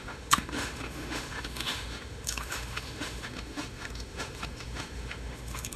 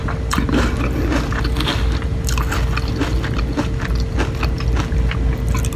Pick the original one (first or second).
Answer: second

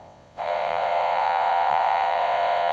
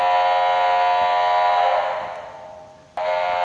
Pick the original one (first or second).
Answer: second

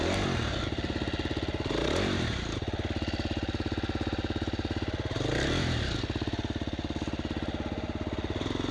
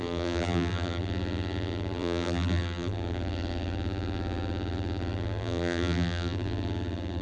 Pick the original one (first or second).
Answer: first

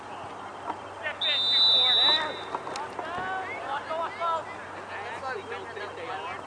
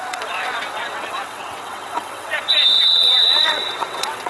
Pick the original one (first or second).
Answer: first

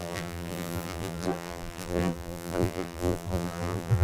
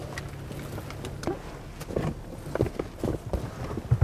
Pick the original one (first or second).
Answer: second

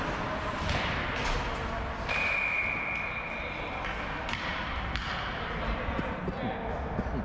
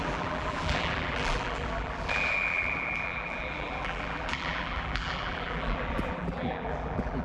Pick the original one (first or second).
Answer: first